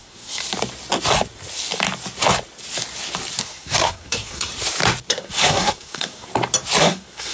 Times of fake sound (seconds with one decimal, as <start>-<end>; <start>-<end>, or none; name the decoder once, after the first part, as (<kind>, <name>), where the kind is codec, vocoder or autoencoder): 0.0-0.4 (codec, SNAC); 3.4-4.5; 5.1-6.3; 6.8-7.3